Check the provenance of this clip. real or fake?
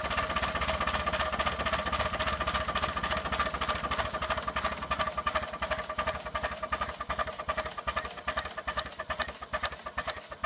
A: real